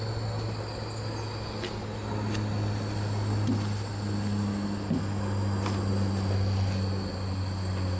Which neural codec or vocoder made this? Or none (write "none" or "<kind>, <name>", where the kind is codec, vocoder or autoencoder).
none